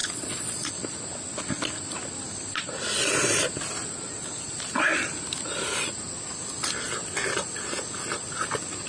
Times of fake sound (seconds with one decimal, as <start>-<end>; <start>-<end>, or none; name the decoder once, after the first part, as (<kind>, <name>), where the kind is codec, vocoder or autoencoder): 0.0-0.7 (vocoder, Vocos)